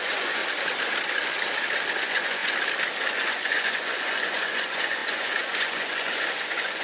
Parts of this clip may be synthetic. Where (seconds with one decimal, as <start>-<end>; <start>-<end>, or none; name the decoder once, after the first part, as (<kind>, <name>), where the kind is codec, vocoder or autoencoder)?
0.0-0.4 (vocoder, Vocos); 2.0-2.4; 3.1-6.8